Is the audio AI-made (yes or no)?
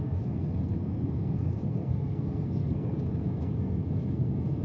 yes